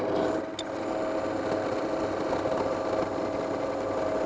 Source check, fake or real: real